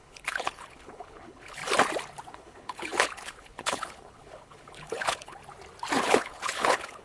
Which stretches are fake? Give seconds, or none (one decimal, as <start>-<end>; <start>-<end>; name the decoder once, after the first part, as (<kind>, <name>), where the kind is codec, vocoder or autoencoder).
0.0-1.6 (codec, HILCodec); 2.3-5.4; 6.0-7.0

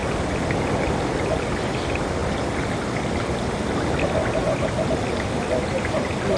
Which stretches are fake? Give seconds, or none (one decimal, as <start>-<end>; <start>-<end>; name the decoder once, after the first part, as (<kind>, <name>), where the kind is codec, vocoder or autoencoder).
none

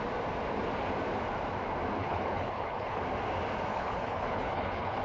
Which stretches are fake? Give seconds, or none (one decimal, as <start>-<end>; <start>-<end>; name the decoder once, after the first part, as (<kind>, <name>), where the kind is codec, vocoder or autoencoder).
2.0-3.0 (codec, HILCodec); 3.7-5.0

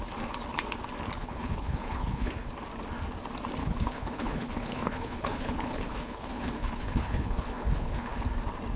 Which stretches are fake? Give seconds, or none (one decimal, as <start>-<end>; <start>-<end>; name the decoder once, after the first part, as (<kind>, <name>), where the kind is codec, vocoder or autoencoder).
1.2-2.5 (codec, HILCodec); 3.6-8.2

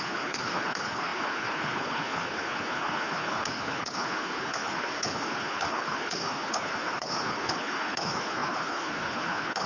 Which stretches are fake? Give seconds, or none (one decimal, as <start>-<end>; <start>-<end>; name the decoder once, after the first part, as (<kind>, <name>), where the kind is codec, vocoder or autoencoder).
0.0-9.7 (codec, HILCodec)

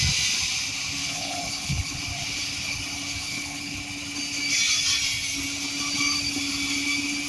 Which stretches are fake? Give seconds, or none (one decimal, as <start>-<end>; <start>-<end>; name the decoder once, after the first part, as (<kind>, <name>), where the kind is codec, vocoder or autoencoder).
1.0-2.0 (codec, HILCodec); 3.2-3.8

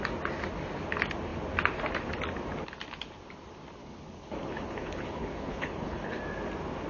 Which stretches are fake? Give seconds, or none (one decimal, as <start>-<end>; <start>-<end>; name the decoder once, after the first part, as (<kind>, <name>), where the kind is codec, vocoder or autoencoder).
3.8-6.2 (codec, HILCodec)